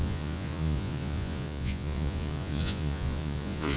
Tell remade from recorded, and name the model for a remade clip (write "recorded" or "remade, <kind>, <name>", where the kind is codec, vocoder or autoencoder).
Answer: remade, vocoder, Vocos